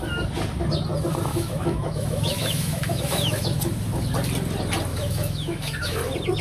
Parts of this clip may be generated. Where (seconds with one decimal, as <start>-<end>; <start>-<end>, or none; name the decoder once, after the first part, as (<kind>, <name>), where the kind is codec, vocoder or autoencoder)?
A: 1.3-3.6 (autoencoder, DAC-VAE); 4.9-6.0